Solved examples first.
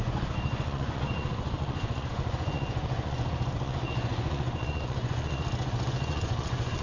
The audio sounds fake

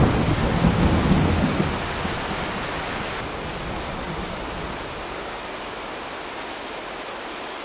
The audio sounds real